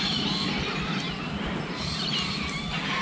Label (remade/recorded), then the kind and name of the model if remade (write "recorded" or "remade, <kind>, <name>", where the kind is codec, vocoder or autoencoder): recorded